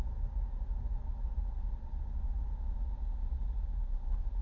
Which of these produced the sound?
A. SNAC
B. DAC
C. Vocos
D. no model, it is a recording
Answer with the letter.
D